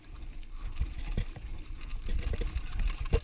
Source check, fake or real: real